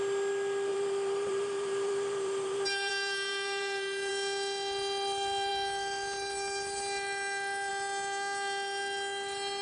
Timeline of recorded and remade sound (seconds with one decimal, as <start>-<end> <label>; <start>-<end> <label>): 0.0-0.7 recorded; 0.7-4.1 remade; 4.1-9.6 recorded